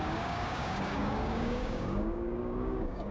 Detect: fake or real fake